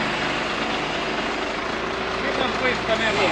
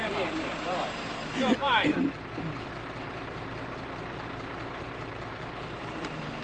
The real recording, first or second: first